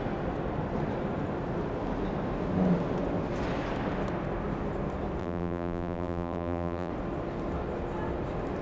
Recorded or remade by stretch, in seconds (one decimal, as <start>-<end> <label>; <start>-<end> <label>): 0.0-5.2 recorded; 5.2-6.9 remade; 6.9-8.6 recorded